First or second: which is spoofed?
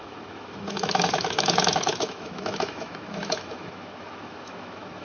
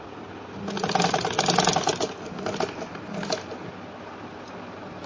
first